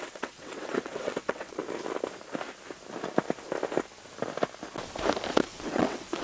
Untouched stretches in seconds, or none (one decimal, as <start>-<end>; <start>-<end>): 1.6-5.3